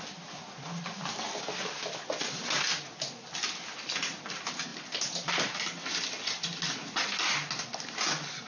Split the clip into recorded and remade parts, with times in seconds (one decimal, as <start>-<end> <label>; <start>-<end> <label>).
0.0-8.5 recorded